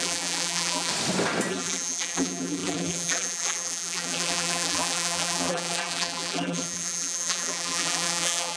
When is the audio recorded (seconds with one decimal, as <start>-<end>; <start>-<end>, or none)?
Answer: 0.9-1.5